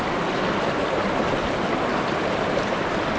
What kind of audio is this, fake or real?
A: real